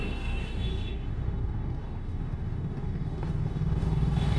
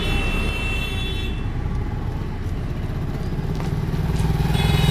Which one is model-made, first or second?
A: first